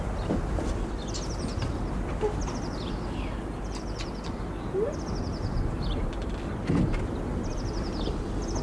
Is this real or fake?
real